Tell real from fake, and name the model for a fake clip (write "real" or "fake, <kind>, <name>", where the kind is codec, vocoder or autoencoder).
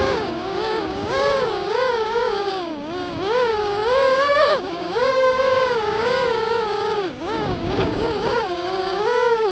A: fake, codec, DAC